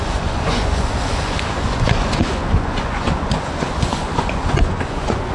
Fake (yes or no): yes